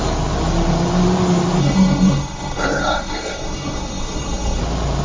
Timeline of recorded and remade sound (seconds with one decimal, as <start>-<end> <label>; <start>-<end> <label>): 0.0-1.6 recorded; 1.6-4.6 remade; 4.6-5.0 recorded